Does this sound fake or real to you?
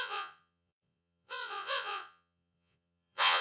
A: fake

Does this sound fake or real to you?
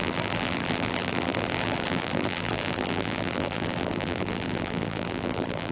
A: fake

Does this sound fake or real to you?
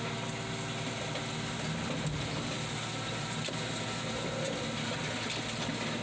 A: real